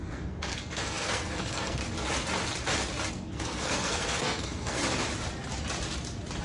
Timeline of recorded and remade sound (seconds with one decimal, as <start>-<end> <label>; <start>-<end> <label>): 0.0-1.8 remade; 1.8-3.1 recorded; 3.1-4.8 remade; 4.8-6.4 recorded